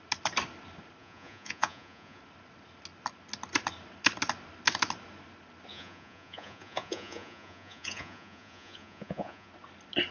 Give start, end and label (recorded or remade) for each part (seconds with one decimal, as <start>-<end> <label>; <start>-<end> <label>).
0.0-1.0 recorded; 1.0-2.2 remade; 2.2-5.7 recorded; 5.7-9.5 remade; 9.5-10.1 recorded